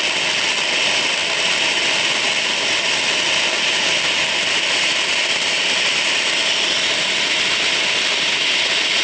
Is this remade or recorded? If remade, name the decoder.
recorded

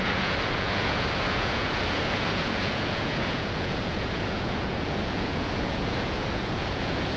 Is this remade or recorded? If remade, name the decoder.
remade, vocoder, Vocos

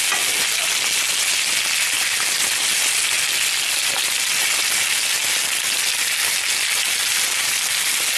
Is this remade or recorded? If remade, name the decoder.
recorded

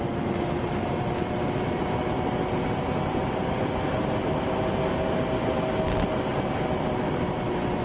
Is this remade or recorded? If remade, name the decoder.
recorded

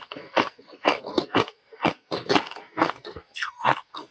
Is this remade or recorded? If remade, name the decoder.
remade, codec, SNAC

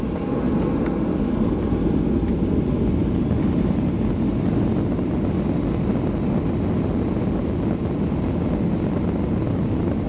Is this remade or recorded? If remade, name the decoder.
recorded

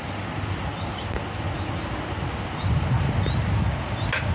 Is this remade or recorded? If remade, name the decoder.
recorded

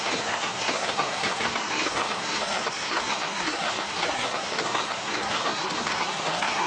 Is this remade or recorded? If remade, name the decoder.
remade, codec, SNAC